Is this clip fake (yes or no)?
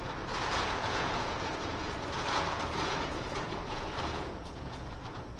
yes